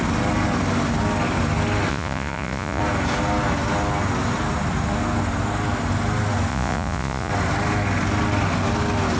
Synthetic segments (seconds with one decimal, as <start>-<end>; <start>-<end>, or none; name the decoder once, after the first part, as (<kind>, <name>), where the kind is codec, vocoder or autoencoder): 1.9-2.8 (vocoder, Vocos); 6.5-7.3